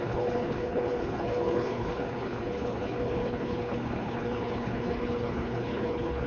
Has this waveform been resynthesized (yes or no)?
yes